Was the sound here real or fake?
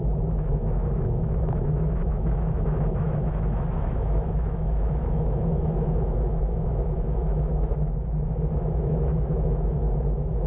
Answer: fake